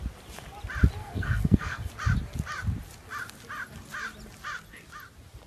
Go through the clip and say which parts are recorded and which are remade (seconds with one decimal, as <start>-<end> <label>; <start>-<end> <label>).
0.0-1.0 recorded; 1.0-1.9 remade; 1.9-5.5 recorded